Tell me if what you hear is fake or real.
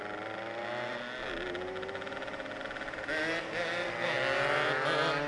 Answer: real